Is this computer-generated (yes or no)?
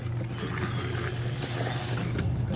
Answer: no